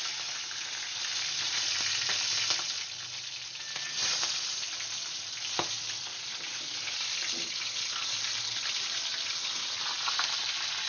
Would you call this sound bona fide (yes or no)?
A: yes